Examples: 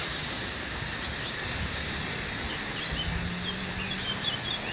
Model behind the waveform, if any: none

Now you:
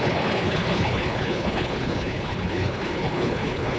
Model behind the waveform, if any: codec, HILCodec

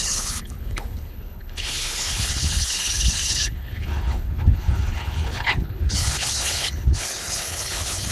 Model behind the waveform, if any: codec, HILCodec